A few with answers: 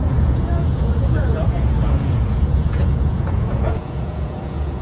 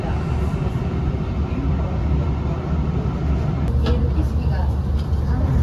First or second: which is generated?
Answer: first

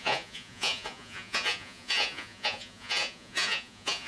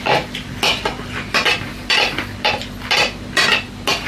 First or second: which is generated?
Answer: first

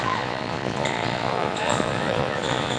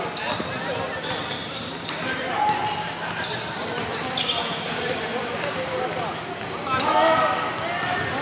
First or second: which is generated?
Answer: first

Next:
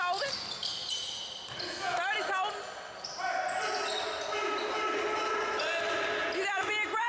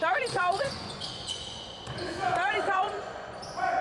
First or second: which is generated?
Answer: second